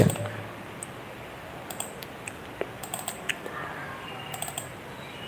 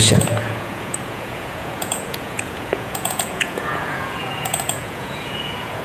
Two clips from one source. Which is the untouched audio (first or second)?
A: first